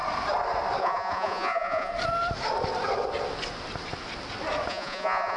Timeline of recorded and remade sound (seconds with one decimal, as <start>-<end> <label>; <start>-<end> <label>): 0.0-0.8 recorded; 0.8-1.9 remade; 1.9-4.7 recorded; 4.7-5.4 remade